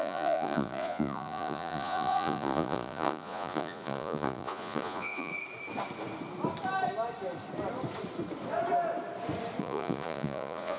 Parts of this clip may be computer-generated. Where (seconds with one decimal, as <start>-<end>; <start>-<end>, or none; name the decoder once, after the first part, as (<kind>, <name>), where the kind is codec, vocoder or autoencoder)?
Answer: 0.0-5.3 (vocoder, Vocos); 9.6-10.8